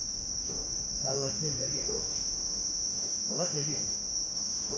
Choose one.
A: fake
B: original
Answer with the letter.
A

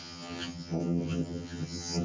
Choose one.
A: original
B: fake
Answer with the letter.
B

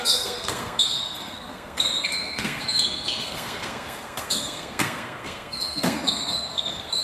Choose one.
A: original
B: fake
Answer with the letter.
B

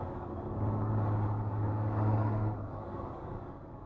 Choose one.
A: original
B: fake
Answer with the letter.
B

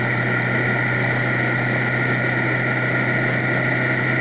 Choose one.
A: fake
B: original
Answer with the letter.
B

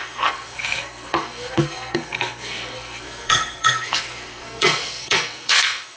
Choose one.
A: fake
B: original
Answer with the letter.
A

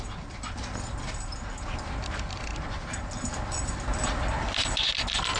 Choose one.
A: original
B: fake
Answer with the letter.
A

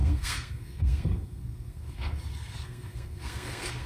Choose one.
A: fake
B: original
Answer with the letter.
A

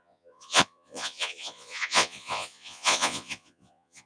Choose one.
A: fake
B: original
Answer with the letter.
A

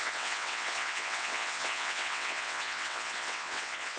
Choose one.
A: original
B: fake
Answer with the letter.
B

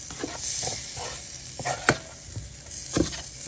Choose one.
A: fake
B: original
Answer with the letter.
B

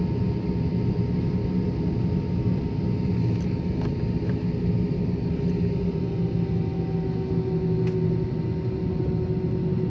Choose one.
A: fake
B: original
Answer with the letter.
B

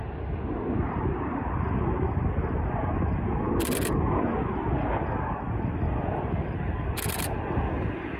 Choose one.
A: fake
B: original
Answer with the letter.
B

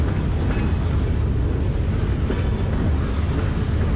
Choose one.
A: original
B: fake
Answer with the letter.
A